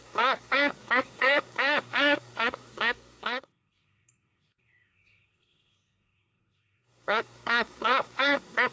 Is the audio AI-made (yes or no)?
yes